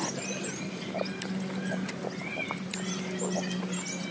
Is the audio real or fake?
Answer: real